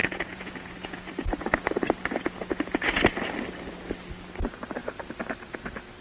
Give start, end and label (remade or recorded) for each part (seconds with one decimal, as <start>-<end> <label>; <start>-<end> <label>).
0.0-3.0 remade; 3.0-6.0 recorded